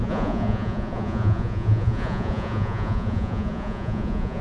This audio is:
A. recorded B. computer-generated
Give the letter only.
B